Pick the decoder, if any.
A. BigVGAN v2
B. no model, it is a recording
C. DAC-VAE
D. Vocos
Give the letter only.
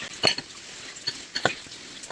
B